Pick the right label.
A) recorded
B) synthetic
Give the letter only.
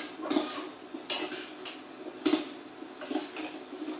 A